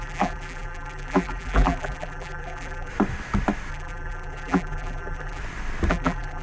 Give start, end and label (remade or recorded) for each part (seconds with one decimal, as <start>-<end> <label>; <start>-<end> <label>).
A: 0.0-2.9 remade; 2.9-3.7 recorded; 3.7-5.4 remade; 5.4-5.9 recorded; 5.9-6.4 remade